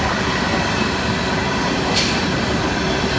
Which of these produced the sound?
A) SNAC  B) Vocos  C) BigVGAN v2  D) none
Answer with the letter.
D